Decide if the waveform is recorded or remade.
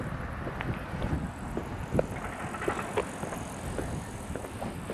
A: remade